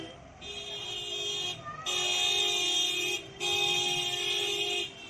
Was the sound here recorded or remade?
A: recorded